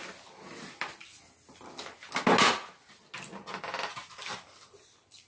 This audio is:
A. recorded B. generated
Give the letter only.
A